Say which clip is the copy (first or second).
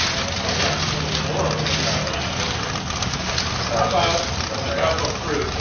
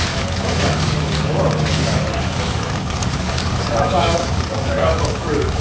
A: second